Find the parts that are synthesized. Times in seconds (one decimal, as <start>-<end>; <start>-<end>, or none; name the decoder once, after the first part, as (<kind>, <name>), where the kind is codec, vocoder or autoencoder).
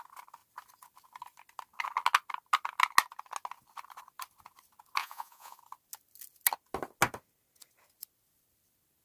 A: 5.0-5.6 (vocoder, Vocos)